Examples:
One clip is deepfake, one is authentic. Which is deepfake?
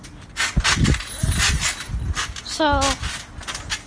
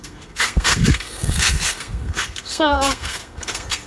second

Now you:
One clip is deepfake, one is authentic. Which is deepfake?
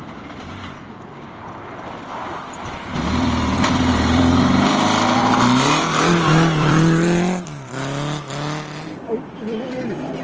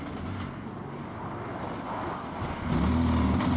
first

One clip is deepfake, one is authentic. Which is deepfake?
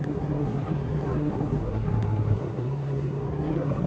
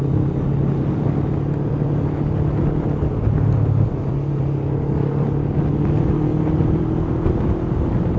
first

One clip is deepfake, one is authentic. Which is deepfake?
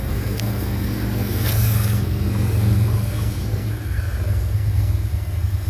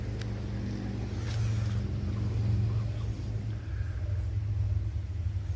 first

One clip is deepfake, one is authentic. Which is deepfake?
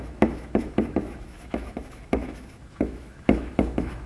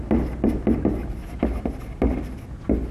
first